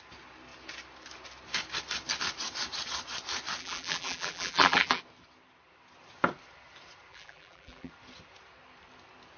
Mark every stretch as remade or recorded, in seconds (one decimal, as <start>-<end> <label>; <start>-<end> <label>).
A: 0.0-3.6 recorded; 3.6-5.0 remade; 5.0-7.1 recorded; 7.1-7.9 remade; 7.9-9.4 recorded